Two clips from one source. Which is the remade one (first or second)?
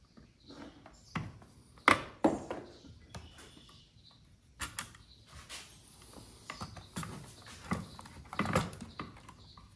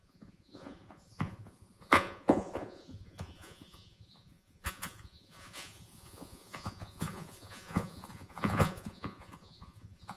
second